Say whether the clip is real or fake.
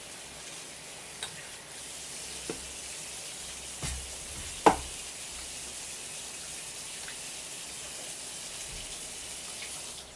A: real